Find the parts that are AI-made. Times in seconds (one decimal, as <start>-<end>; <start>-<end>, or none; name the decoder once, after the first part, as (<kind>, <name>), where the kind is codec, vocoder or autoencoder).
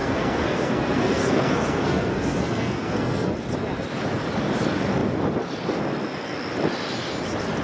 0.0-3.3 (codec, SNAC)